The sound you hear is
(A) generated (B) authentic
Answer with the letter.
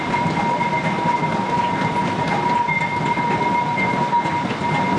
B